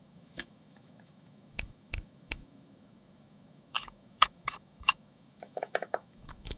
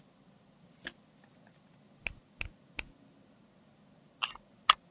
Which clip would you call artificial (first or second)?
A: first